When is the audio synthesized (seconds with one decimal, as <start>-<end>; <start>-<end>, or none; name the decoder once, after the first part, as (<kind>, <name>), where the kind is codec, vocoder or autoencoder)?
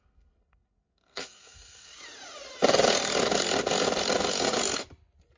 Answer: 0.0-1.9 (codec, SNAC)